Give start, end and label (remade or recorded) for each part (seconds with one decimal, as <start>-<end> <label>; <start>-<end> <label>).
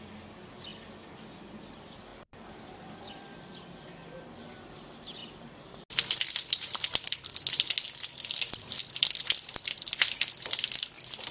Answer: 0.0-2.1 recorded; 2.1-3.5 remade; 3.5-11.3 recorded